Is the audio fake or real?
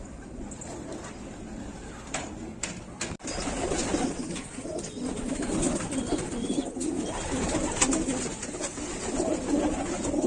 real